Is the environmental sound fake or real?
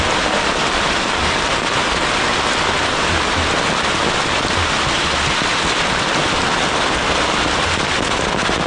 real